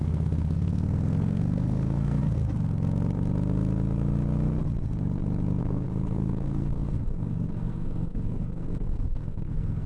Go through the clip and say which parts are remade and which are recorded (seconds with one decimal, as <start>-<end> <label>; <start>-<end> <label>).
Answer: 0.0-2.2 remade; 2.2-5.6 recorded; 5.6-9.9 remade